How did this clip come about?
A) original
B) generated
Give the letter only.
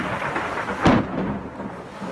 A